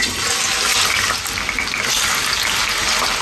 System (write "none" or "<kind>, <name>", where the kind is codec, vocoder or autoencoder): none